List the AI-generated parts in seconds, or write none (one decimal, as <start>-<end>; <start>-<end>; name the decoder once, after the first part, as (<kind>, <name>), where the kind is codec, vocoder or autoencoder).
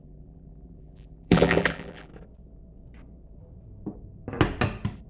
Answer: 0.0-2.1 (vocoder, BigVGAN v2)